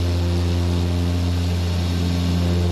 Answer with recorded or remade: recorded